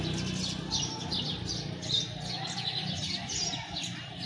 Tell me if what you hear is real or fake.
real